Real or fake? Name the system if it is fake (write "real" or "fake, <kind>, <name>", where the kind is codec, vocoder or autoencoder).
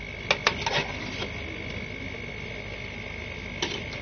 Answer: real